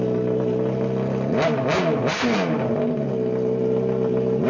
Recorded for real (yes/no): yes